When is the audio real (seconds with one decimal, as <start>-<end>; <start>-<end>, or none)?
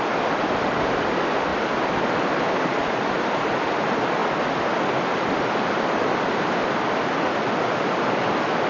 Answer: 0.0-8.7